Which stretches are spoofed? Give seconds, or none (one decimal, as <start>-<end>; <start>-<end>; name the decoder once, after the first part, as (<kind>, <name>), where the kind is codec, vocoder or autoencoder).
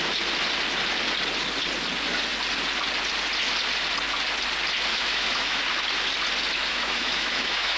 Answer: 4.9-5.6 (autoencoder, DAC-VAE); 6.7-7.8